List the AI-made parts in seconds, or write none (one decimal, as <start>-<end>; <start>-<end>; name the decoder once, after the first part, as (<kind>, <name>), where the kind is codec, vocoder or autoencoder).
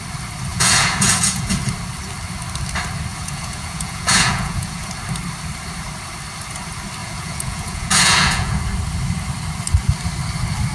0.5-1.5 (vocoder, Vocos); 3.1-4.9; 7.0-8.6